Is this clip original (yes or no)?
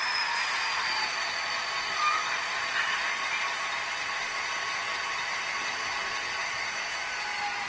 yes